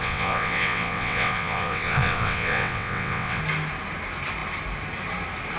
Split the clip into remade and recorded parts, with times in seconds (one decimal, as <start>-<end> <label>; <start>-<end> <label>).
0.0-3.4 remade; 3.4-5.6 recorded